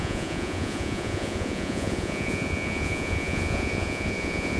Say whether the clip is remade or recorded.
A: remade